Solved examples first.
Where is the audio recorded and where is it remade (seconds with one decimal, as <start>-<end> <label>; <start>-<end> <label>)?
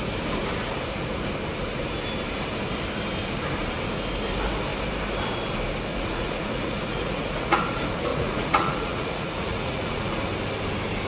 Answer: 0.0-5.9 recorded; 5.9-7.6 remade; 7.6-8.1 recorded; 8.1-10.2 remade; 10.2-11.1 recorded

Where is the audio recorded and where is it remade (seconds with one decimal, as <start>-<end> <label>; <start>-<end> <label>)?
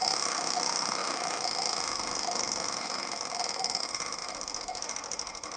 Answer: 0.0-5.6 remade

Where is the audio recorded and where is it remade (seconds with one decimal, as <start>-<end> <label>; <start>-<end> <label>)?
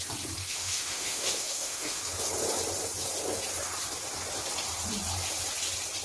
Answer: 0.0-0.4 recorded; 0.4-2.0 remade; 2.0-6.0 recorded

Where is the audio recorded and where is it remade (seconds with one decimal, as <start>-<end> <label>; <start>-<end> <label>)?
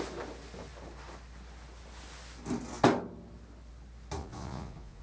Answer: 0.0-4.2 recorded; 4.2-5.0 remade